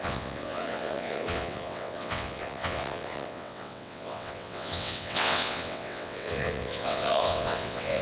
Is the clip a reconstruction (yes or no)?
yes